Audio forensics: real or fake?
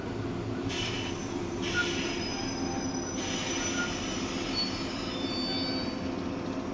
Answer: real